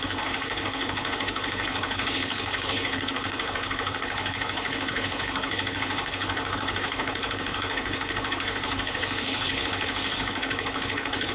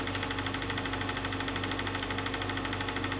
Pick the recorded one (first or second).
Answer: second